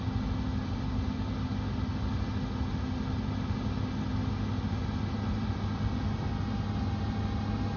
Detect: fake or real real